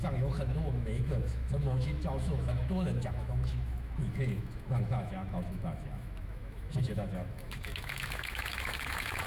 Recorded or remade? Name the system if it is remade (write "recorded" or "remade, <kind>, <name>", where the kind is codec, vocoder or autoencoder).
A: remade, autoencoder, DAC-VAE